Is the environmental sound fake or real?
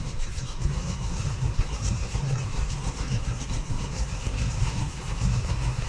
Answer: fake